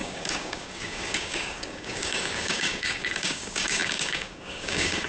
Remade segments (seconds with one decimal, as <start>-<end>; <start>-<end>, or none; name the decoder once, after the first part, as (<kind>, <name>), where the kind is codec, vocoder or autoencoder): 0.0-5.1 (codec, DAC)